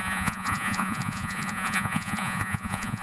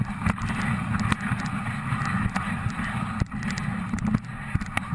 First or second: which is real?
second